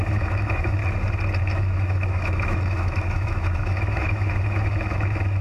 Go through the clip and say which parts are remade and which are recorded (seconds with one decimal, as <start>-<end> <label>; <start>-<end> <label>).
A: 0.0-0.8 remade; 0.8-1.4 recorded; 1.4-5.4 remade